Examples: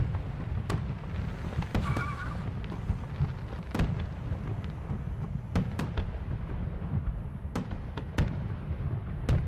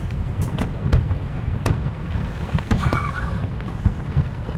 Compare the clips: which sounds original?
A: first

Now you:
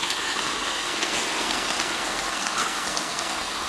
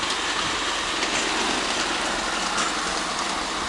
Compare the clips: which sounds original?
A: second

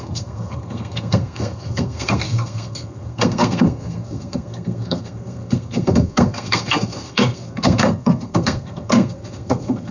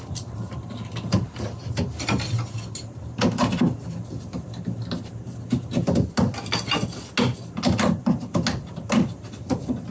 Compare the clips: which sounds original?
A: second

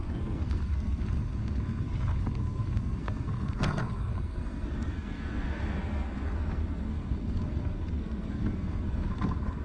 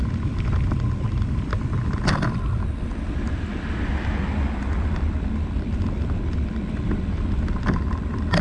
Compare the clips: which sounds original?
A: second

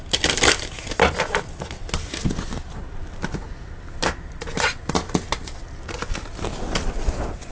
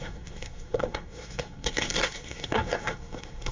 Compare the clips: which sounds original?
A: first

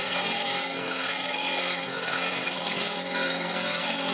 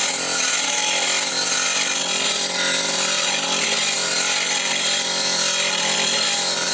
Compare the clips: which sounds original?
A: second